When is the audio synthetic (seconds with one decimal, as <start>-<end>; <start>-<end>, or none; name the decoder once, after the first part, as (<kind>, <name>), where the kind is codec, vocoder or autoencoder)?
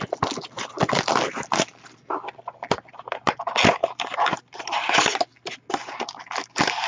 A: 3.8-4.6 (vocoder, BigVGAN v2)